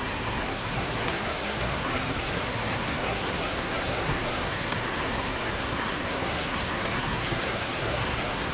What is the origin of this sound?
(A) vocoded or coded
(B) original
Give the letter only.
A